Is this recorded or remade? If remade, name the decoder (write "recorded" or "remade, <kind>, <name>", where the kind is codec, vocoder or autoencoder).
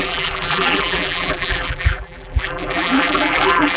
remade, vocoder, BigVGAN v2